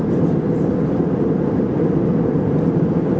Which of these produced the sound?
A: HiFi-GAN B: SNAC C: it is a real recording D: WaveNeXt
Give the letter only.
C